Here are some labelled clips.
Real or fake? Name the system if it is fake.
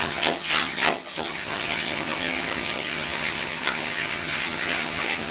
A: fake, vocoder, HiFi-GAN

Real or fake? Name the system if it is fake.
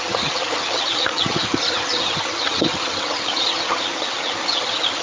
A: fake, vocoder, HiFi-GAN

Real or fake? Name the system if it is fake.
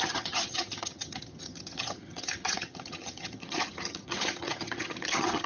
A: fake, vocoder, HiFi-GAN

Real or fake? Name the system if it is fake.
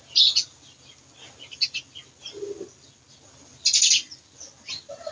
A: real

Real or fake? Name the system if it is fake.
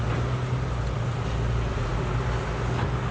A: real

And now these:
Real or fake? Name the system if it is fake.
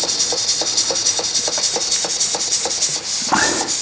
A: real